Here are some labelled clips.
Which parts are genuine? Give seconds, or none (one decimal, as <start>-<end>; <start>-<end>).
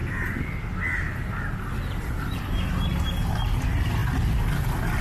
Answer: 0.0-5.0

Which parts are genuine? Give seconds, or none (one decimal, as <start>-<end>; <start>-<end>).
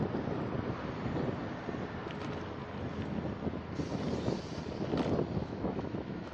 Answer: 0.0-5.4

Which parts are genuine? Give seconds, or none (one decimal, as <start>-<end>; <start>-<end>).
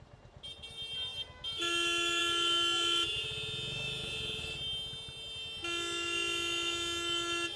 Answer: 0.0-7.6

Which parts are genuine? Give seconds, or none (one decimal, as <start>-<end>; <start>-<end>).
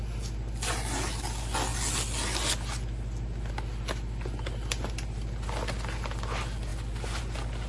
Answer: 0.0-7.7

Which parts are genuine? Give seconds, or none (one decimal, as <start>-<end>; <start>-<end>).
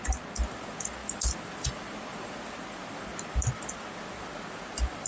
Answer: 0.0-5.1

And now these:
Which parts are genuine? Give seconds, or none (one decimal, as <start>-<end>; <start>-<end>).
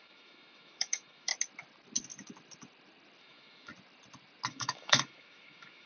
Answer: 1.3-3.2; 3.7-4.5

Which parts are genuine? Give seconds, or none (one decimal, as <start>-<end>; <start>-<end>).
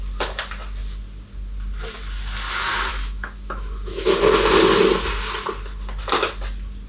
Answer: 0.0-2.9; 4.2-6.9